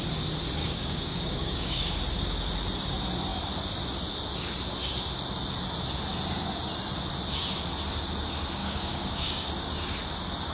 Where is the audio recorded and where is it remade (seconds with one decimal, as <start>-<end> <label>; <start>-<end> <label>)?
0.0-0.6 recorded; 0.6-1.9 remade; 1.9-8.6 recorded; 8.6-9.5 remade; 9.5-10.5 recorded